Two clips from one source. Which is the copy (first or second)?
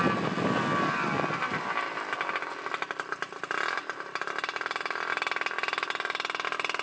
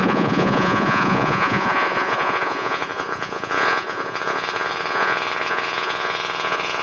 second